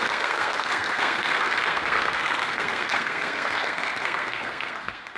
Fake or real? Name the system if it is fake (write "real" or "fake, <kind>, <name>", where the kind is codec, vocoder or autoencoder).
fake, codec, SNAC